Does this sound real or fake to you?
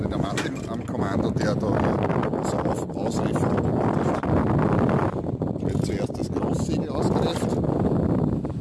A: real